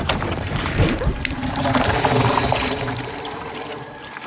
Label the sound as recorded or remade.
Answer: remade